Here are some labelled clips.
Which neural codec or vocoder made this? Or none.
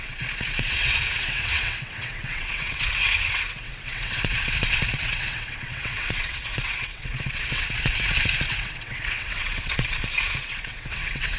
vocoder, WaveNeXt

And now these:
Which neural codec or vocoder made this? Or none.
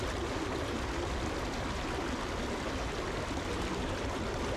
none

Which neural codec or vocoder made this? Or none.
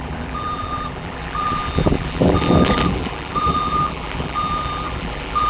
vocoder, BigVGAN v2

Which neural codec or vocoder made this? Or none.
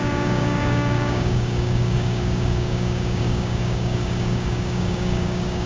codec, DAC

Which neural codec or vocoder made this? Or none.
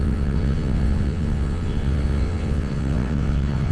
vocoder, WaveNeXt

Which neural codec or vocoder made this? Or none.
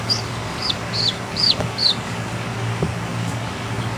codec, DAC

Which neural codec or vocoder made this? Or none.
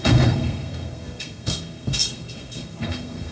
codec, SNAC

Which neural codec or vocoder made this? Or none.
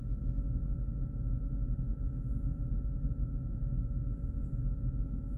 none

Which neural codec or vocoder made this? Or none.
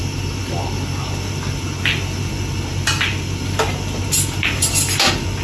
none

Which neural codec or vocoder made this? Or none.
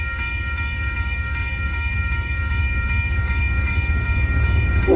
codec, DAC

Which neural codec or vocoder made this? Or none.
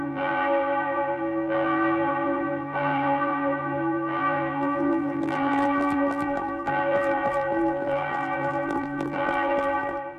vocoder, BigVGAN v2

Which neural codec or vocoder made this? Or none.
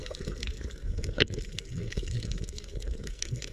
codec, SNAC